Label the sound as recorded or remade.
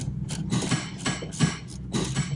recorded